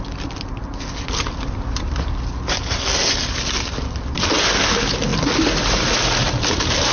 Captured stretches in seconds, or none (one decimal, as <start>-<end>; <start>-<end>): 0.0-6.9